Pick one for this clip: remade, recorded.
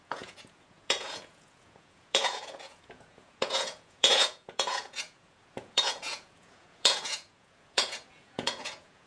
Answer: remade